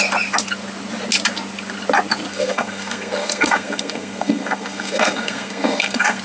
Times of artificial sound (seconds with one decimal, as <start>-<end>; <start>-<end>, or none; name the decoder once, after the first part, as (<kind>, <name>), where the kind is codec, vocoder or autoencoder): 2.3-6.2 (codec, SNAC)